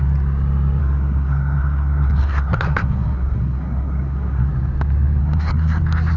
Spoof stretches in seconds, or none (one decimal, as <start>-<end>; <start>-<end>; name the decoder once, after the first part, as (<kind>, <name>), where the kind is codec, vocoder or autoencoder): 0.8-4.5 (codec, SNAC); 5.2-5.8